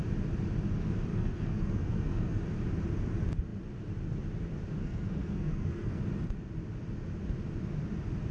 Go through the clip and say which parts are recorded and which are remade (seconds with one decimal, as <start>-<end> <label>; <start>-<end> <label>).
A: 0.0-1.1 recorded; 1.1-2.4 remade; 2.4-4.8 recorded; 4.8-6.0 remade; 6.0-8.3 recorded